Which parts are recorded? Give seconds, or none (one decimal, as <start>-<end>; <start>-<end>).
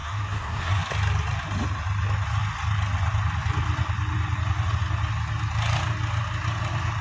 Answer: 0.8-7.0